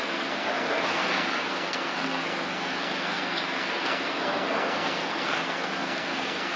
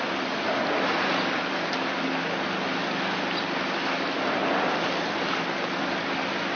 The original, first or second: second